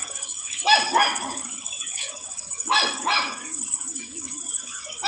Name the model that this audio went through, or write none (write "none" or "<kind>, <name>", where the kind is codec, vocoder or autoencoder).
codec, DAC